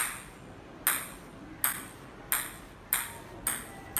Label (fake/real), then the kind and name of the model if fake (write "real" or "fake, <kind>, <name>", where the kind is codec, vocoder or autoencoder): real